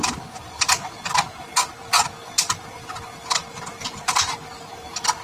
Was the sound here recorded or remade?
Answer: recorded